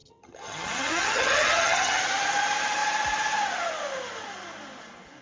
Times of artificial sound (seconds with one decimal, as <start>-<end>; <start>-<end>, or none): 0.0-2.0